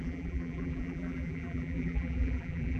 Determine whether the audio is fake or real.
fake